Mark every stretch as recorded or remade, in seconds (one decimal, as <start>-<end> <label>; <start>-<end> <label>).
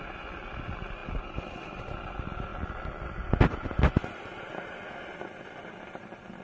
0.0-6.4 recorded